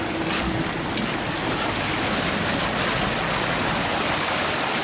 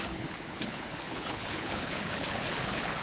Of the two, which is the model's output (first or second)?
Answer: second